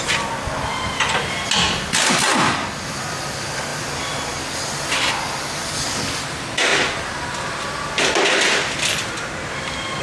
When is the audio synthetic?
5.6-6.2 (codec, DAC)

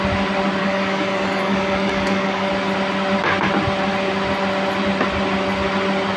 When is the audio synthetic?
0.6-2.5 (codec, DAC)

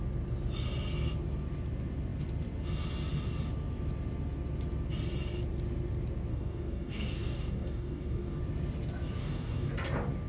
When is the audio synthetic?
6.3-8.4 (codec, DAC); 9.2-9.7

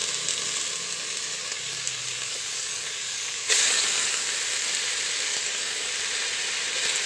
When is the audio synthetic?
1.4-4.2 (codec, DAC); 5.3-5.9

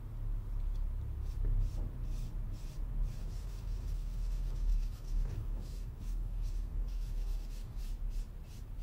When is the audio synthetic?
3.2-7.8 (codec, DAC)

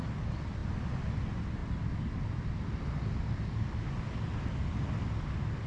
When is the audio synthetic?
none

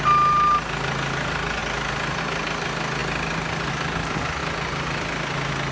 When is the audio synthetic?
none

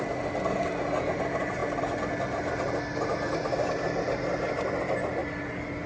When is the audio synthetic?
none